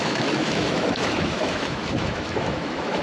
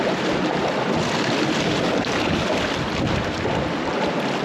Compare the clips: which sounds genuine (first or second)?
second